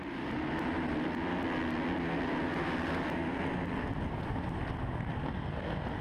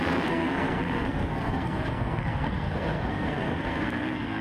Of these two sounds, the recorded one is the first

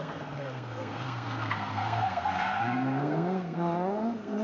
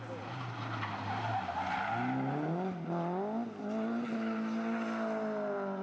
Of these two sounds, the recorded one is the second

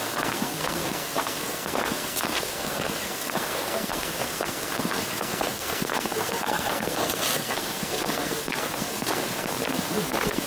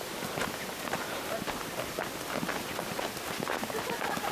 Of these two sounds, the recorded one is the second